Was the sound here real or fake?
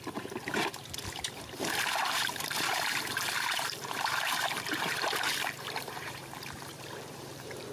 fake